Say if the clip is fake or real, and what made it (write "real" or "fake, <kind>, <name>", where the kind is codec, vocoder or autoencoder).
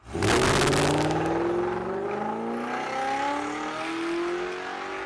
real